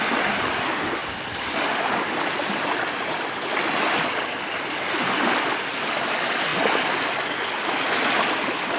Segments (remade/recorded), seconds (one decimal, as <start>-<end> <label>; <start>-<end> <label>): 0.0-8.8 recorded